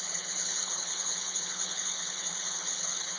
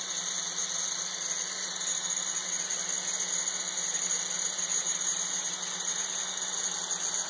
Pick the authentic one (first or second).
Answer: second